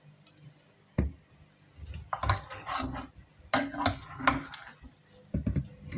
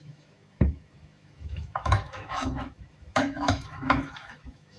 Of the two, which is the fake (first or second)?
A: second